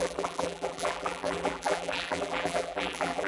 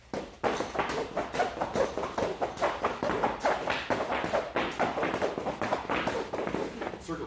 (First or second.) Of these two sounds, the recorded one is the second